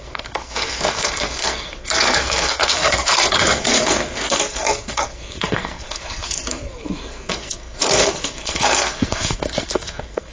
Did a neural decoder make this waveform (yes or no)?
yes